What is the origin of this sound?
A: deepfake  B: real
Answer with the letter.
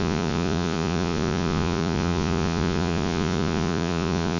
A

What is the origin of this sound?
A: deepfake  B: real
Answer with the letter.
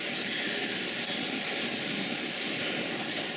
B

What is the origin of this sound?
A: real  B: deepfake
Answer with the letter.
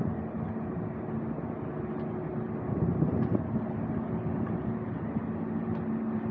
A